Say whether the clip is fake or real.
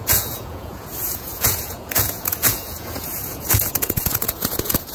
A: fake